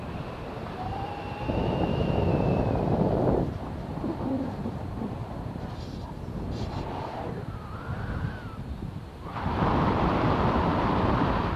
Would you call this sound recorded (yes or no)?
no